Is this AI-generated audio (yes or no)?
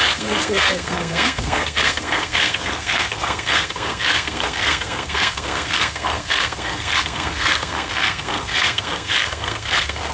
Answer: yes